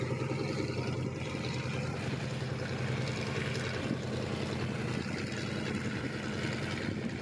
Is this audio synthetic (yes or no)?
no